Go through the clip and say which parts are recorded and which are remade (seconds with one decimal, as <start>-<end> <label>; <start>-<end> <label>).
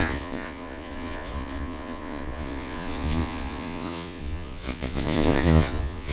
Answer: 0.0-6.1 remade